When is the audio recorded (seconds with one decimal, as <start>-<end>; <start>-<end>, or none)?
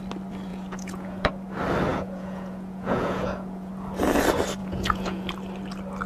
0.0-0.5; 1.3-1.9; 3.7-4.6; 5.3-6.1